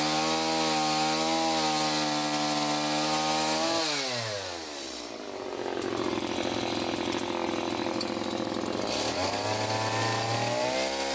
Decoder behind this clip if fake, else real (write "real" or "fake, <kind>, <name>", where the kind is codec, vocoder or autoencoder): real